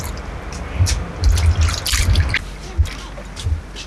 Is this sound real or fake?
real